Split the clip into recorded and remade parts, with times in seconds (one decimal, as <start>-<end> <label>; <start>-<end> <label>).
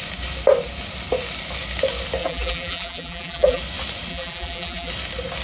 0.0-2.2 recorded; 2.2-3.6 remade; 3.6-4.1 recorded; 4.1-4.9 remade; 4.9-5.4 recorded